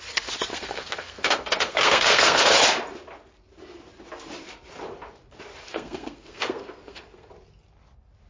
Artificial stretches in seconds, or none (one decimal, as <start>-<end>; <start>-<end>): 0.5-2.4; 5.6-7.3